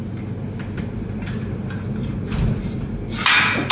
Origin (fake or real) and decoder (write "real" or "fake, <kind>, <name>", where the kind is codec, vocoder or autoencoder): real